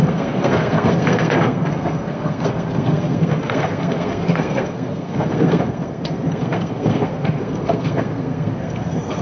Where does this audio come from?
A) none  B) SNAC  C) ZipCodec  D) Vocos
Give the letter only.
B